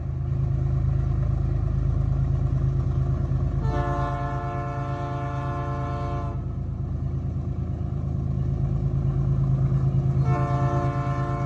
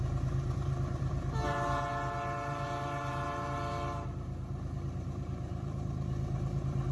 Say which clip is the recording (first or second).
first